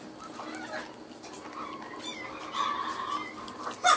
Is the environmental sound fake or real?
real